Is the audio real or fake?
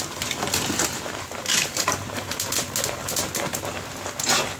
real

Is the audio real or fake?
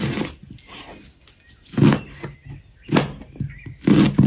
real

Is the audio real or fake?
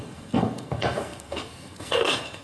fake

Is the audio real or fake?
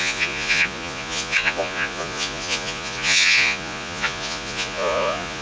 fake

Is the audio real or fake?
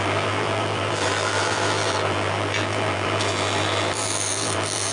fake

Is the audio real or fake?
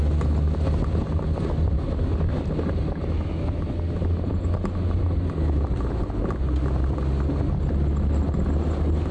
real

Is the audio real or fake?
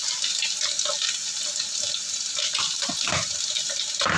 real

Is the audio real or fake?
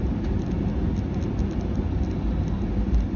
real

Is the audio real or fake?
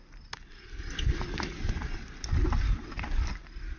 real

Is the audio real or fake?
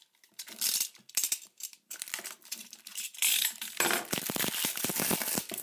fake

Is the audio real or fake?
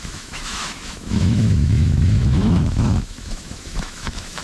fake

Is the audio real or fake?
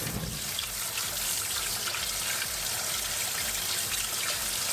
real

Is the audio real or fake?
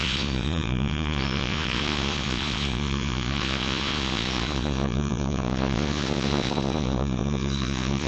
fake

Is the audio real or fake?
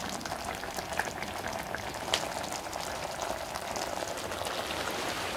real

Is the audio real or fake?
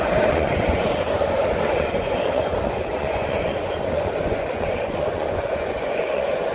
fake